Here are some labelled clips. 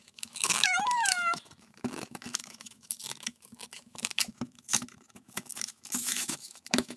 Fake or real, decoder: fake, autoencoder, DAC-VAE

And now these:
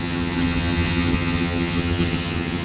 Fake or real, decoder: fake, vocoder, HiFi-GAN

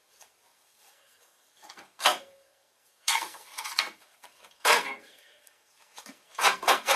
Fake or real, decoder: fake, codec, SNAC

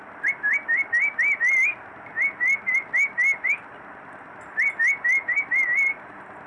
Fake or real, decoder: real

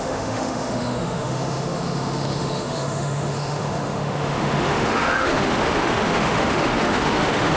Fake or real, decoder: fake, autoencoder, DAC-VAE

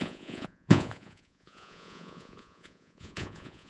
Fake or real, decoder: fake, vocoder, Vocos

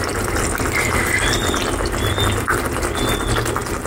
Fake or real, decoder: real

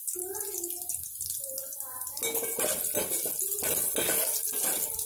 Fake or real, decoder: real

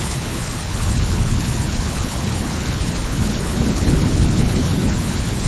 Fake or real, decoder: fake, codec, HILCodec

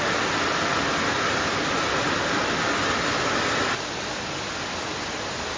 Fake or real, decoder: real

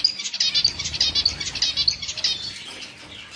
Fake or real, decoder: real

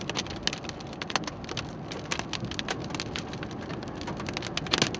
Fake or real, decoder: real